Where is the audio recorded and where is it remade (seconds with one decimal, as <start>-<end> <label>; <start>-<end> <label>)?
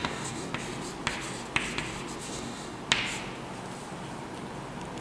0.0-0.5 remade; 0.5-2.2 recorded; 2.2-2.8 remade; 2.8-5.0 recorded